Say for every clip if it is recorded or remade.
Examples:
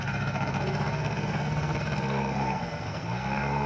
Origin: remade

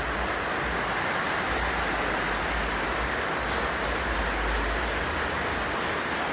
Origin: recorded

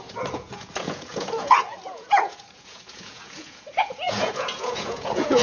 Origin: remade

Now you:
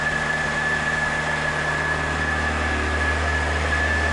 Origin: recorded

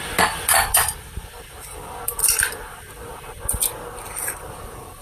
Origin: remade